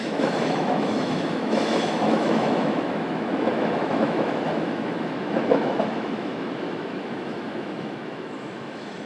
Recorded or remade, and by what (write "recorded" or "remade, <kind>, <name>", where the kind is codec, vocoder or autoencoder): remade, autoencoder, DAC-VAE